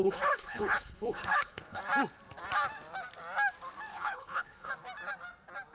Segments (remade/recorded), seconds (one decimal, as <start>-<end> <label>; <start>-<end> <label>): 0.0-1.8 remade; 1.8-3.9 recorded; 3.9-4.7 remade; 4.7-5.7 recorded